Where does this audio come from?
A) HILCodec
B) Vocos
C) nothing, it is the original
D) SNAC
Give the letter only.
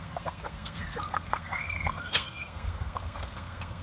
D